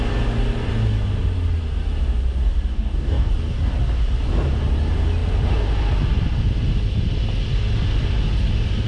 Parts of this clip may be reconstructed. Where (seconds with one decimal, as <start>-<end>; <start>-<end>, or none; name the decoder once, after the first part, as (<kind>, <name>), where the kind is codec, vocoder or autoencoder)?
2.7-3.3 (codec, DAC)